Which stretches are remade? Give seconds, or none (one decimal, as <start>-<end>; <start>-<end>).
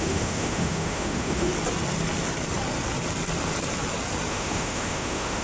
0.0-1.5; 4.3-5.4